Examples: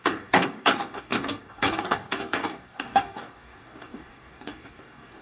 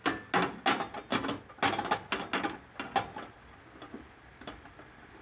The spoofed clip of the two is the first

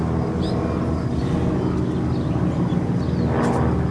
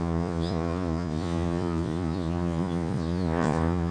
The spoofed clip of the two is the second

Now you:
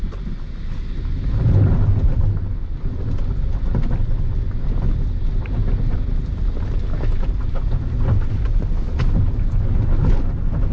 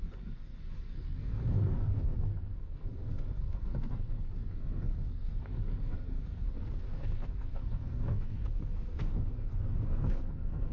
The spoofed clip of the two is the second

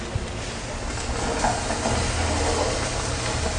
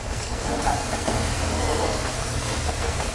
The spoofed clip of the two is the second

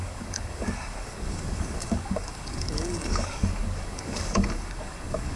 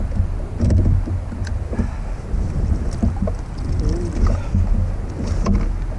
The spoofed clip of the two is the first